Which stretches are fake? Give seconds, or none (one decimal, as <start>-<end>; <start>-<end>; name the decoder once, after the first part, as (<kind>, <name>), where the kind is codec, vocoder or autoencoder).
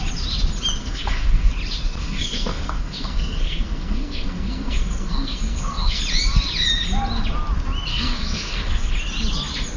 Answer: 0.8-1.5 (codec, SNAC); 2.0-6.0; 7.9-8.9